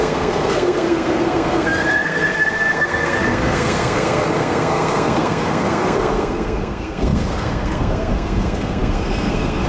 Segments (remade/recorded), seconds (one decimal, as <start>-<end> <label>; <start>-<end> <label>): 0.0-9.7 remade